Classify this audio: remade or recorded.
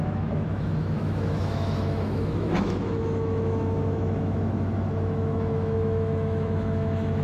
remade